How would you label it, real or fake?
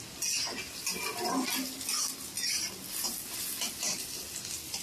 real